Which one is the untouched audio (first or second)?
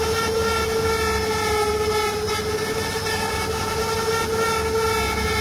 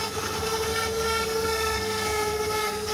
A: first